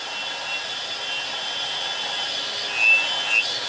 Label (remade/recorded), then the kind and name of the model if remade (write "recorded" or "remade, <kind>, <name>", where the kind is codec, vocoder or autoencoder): recorded